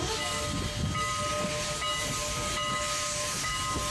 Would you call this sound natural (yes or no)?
yes